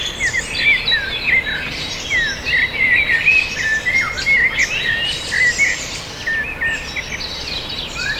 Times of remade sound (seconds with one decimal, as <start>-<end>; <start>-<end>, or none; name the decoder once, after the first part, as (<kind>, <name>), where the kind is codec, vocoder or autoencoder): none

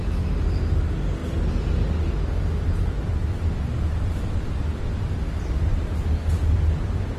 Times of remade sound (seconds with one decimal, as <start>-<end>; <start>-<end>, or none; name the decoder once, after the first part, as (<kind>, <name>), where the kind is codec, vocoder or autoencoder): none